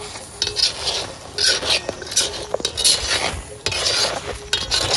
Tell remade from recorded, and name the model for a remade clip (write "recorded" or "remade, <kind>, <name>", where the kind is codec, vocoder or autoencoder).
recorded